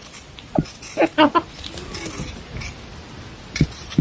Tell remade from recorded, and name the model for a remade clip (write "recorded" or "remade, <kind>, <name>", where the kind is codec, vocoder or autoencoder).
recorded